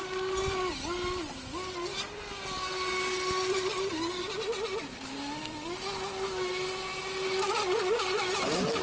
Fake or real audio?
real